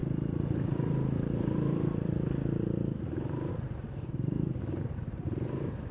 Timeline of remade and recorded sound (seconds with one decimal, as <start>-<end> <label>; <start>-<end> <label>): 0.0-5.9 recorded